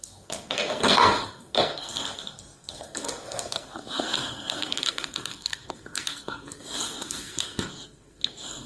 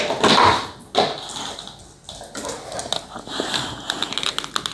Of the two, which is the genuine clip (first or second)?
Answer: second